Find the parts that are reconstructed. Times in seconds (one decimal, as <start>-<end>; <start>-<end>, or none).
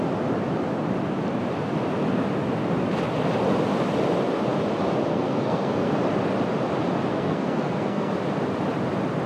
5.1-6.0; 7.1-8.1